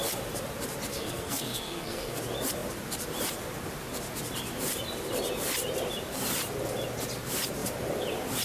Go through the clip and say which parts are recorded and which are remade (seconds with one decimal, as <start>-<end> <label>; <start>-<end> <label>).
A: 0.0-0.9 recorded; 0.9-2.2 remade; 2.2-8.4 recorded